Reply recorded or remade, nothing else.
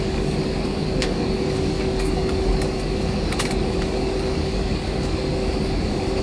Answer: remade